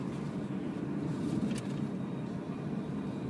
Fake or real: real